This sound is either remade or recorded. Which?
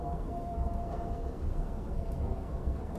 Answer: remade